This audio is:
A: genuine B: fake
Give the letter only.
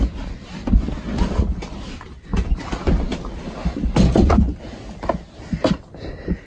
A